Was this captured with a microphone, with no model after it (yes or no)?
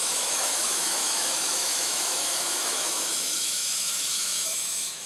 no